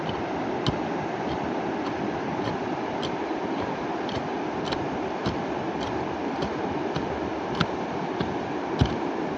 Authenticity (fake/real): fake